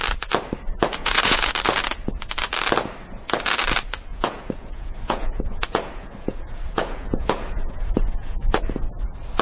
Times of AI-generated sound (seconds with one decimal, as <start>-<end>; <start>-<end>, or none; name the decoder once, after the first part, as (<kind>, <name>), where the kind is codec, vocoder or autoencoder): 1.0-1.5 (vocoder, Vocos); 4.1-8.6